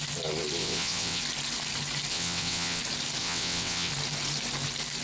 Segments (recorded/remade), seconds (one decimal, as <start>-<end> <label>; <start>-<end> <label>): 0.0-0.6 recorded; 0.6-1.2 remade; 1.2-2.1 recorded; 2.1-2.8 remade; 2.8-3.2 recorded; 3.2-3.9 remade; 3.9-5.0 recorded